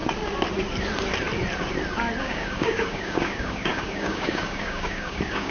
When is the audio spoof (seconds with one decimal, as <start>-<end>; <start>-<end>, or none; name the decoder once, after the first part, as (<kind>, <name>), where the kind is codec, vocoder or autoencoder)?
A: 2.2-5.5 (codec, DAC)